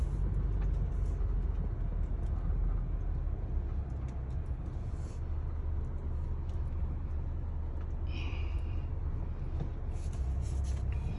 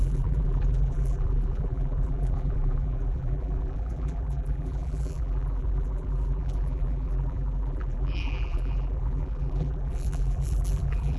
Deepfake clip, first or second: second